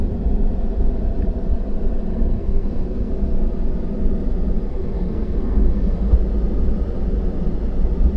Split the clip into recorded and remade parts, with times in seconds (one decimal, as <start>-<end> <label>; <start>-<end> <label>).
0.0-2.1 recorded; 2.1-3.1 remade; 3.1-4.7 recorded; 4.7-6.1 remade; 6.1-8.2 recorded